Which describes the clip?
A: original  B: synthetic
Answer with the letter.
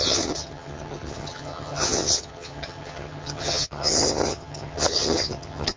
B